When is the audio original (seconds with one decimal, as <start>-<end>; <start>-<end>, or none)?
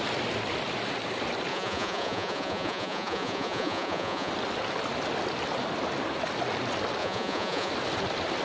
0.0-1.5; 4.3-7.0; 7.7-8.4